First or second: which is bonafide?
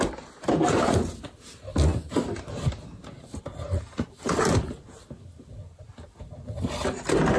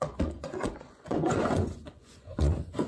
first